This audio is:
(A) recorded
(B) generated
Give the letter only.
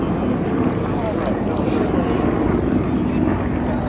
A